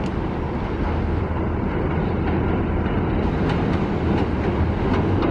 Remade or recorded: recorded